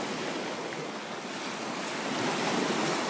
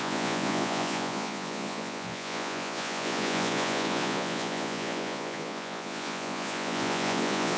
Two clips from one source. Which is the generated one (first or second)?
second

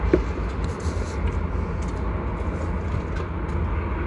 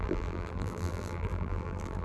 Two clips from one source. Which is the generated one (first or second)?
second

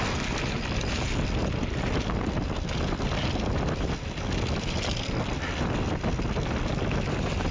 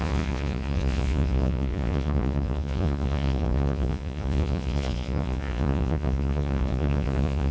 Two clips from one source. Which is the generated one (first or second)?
second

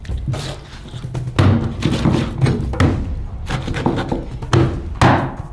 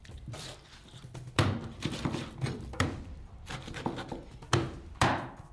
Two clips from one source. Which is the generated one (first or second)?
second